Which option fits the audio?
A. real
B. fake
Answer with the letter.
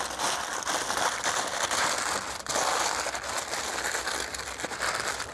A